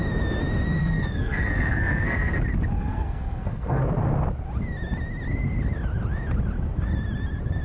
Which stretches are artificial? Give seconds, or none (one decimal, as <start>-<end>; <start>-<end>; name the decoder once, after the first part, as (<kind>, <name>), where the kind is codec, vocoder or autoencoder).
0.8-2.4 (codec, SNAC); 2.8-3.8